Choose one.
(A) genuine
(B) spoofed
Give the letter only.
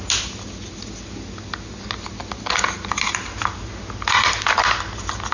A